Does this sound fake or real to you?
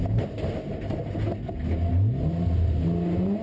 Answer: real